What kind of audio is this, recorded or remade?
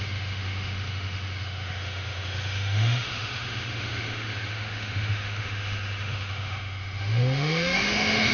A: remade